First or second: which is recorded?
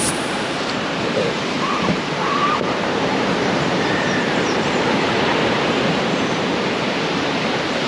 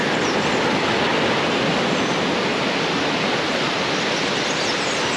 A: second